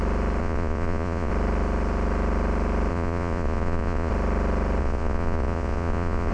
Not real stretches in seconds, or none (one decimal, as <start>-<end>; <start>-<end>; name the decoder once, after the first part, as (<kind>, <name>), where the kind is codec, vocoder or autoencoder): 0.4-1.3 (vocoder, Vocos); 2.9-4.1; 4.8-6.3